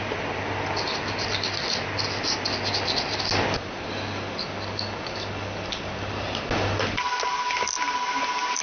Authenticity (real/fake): real